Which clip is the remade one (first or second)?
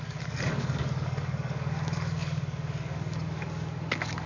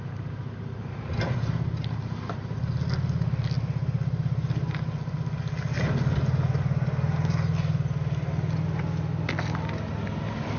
first